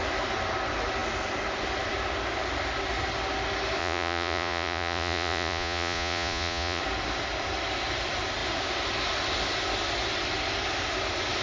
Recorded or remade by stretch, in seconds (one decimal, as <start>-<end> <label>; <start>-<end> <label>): 0.0-3.8 recorded; 3.8-6.8 remade; 6.8-11.4 recorded